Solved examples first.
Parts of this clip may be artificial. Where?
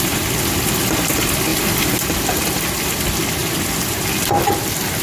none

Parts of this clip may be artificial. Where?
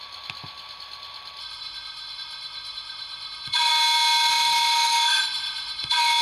1.4-3.7; 4.3-6.2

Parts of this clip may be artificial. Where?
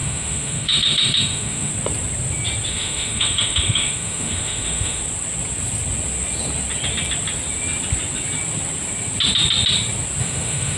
0.0-1.7; 2.7-5.0; 10.2-10.8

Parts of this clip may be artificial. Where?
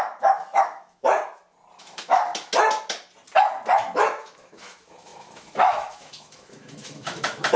0.0-1.2; 1.8-2.3; 3.7-7.6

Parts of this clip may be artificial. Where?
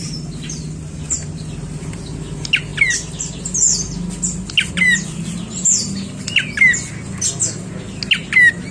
none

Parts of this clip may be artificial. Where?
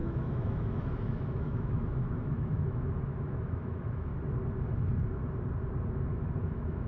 0.0-4.1; 6.4-6.9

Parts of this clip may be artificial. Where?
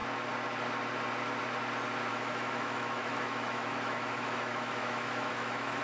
2.1-5.8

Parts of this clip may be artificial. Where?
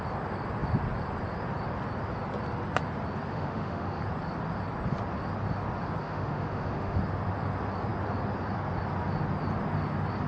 3.3-4.0; 6.0-7.0